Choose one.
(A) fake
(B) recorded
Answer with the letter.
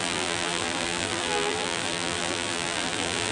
A